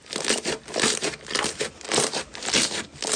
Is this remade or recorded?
recorded